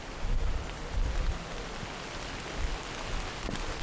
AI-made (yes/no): no